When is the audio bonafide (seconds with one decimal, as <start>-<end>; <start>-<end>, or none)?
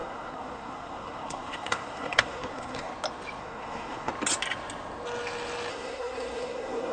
2.9-3.4; 4.1-5.7